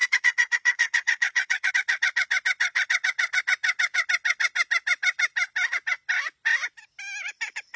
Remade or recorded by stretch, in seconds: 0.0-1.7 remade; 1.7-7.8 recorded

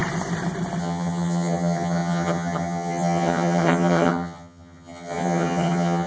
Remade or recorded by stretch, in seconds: 0.0-0.8 recorded; 0.8-6.1 remade

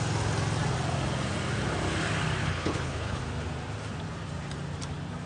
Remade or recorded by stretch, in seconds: 0.0-2.4 recorded; 2.4-3.2 remade; 3.2-5.3 recorded

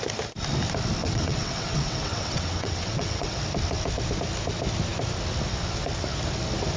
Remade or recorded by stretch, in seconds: 0.0-1.0 recorded; 1.0-3.4 remade; 3.4-6.8 recorded

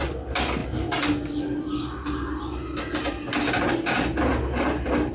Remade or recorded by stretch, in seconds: 0.0-5.1 recorded

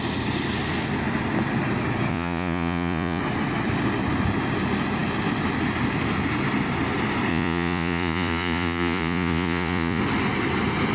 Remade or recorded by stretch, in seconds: 0.0-2.1 recorded; 2.1-3.2 remade; 3.2-7.3 recorded; 7.3-10.0 remade; 10.0-10.9 recorded